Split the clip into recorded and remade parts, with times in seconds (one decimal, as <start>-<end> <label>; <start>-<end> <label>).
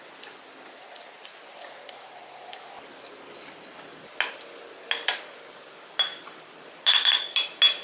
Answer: 0.0-7.8 recorded